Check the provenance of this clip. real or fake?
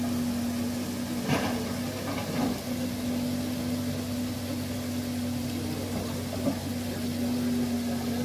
real